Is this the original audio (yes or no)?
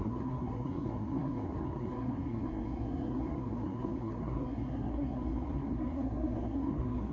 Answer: no